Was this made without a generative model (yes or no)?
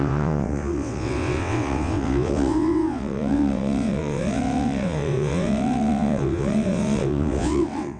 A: no